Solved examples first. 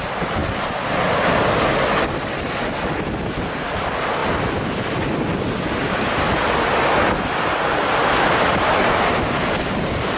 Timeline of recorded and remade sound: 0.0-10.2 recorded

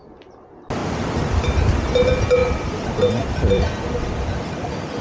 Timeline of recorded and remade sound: 0.0-0.8 recorded; 0.8-1.7 remade; 1.7-2.4 recorded; 2.4-4.5 remade; 4.5-5.0 recorded

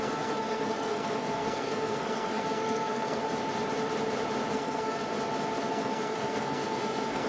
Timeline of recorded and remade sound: 0.0-3.2 remade; 3.2-4.5 recorded; 4.5-5.0 remade; 5.0-5.7 recorded; 5.7-7.3 remade

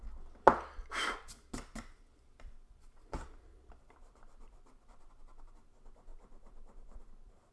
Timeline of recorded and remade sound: 0.0-2.1 recorded; 2.1-5.1 remade; 5.1-6.1 recorded; 6.1-7.0 remade; 7.0-7.5 recorded

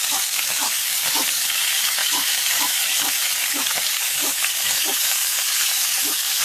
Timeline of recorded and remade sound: 0.0-6.4 remade

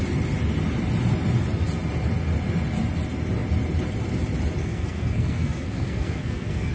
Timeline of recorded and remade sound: 0.0-4.6 recorded; 4.6-6.7 remade

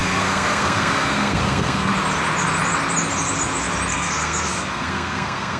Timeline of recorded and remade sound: 0.0-1.9 remade; 1.9-3.9 recorded; 3.9-5.6 remade

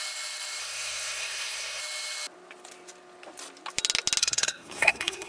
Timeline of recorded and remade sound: 0.0-0.6 recorded; 0.6-1.8 remade; 1.8-4.2 recorded; 4.2-5.3 remade